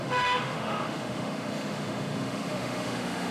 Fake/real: fake